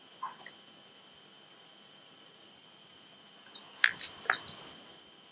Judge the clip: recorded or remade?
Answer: recorded